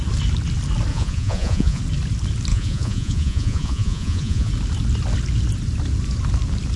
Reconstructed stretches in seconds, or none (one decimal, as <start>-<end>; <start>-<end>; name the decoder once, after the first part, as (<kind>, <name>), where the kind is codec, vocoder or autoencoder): 0.9-1.8 (vocoder, Vocos); 2.5-4.5